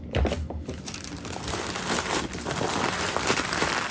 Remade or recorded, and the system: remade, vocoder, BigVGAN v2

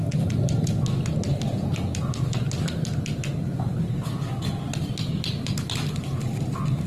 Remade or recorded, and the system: recorded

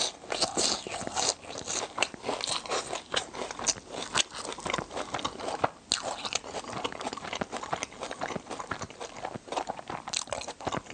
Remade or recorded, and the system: recorded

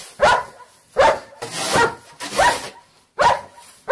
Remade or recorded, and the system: recorded